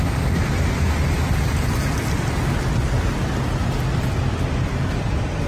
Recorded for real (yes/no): yes